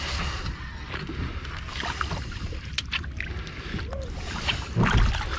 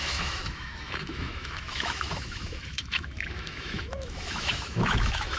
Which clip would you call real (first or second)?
first